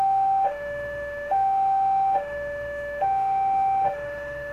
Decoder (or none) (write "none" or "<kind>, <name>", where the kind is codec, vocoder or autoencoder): autoencoder, DAC-VAE